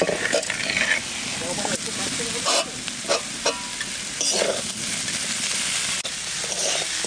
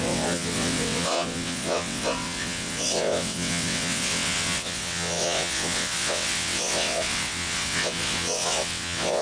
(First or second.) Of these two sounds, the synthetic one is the second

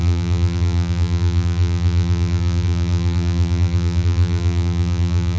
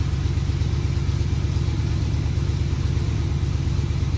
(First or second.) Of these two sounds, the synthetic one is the first